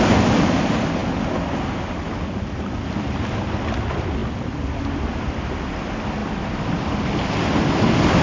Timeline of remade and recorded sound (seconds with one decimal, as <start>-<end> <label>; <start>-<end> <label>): 0.0-4.2 recorded; 4.2-5.8 remade; 5.8-6.2 recorded; 6.2-8.2 remade